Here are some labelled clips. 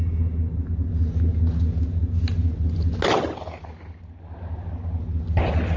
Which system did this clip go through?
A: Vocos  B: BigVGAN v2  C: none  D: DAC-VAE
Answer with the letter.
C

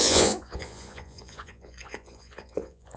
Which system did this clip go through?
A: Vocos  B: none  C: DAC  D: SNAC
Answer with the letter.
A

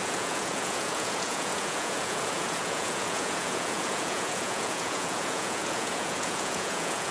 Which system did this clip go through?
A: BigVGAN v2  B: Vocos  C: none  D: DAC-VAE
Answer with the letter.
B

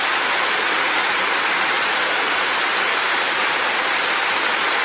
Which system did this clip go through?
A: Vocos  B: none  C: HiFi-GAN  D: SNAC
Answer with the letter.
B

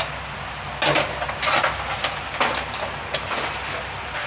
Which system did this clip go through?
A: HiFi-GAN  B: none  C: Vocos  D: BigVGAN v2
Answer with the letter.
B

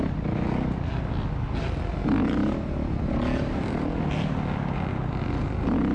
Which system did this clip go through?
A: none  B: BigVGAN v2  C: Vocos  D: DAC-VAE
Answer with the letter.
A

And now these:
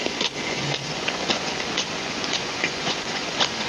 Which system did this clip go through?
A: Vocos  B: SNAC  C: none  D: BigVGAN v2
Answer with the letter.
A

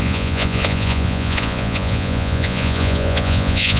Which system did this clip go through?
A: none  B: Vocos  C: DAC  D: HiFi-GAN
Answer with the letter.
B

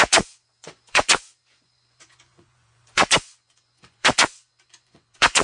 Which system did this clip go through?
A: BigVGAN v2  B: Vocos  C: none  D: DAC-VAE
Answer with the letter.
B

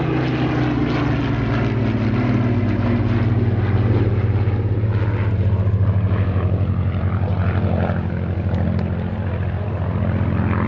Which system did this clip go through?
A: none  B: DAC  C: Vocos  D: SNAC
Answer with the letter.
A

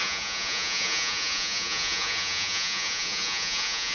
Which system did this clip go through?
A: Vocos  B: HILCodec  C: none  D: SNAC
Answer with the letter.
A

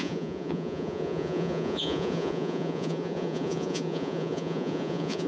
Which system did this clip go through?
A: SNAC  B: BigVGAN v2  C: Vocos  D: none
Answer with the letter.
C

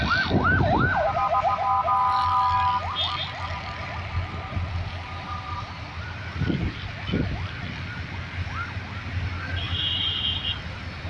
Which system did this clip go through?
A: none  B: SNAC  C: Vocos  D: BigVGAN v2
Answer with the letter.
A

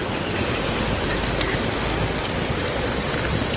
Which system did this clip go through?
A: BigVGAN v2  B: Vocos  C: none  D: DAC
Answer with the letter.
C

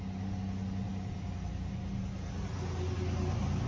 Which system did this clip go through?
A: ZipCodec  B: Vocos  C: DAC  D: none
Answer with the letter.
D